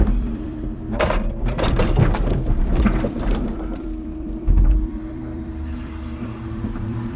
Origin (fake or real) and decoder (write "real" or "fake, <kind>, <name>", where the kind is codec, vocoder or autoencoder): fake, vocoder, BigVGAN v2